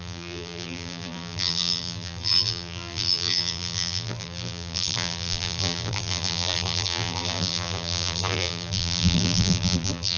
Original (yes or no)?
no